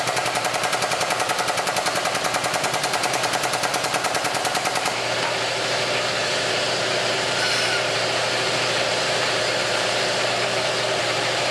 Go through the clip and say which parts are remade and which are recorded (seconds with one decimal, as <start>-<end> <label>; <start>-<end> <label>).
0.0-11.5 remade